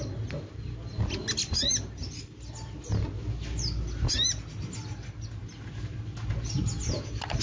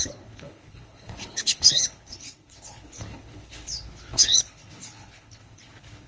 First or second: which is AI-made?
second